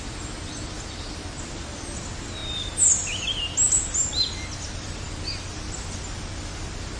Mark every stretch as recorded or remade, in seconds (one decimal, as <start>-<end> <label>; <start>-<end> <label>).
0.0-7.0 recorded